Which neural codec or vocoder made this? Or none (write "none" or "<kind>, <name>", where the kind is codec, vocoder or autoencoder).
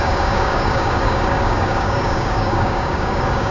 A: codec, DAC